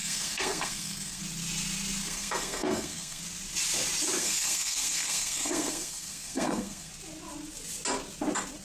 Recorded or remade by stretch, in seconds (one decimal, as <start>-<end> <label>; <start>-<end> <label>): 0.0-1.2 remade; 1.2-2.0 recorded; 2.0-3.2 remade; 3.2-4.2 recorded; 4.2-6.9 remade; 6.9-8.6 recorded